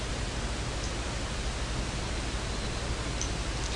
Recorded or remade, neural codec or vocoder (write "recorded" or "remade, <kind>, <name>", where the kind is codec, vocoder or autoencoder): recorded